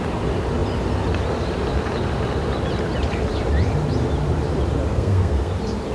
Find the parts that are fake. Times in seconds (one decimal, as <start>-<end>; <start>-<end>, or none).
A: 4.9-5.5